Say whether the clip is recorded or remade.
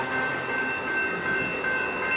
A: recorded